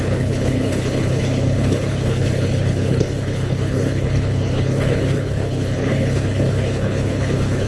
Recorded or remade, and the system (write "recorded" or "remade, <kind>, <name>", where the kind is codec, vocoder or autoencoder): remade, codec, HILCodec